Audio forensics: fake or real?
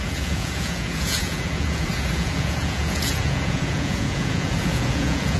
fake